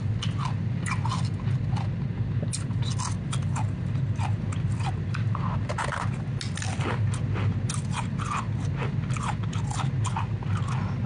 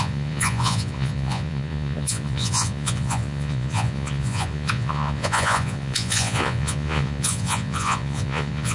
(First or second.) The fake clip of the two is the second